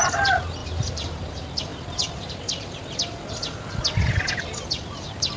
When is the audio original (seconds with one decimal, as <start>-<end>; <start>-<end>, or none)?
0.0-0.6; 1.2-5.4